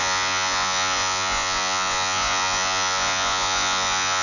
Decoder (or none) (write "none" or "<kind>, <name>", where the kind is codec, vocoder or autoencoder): vocoder, Vocos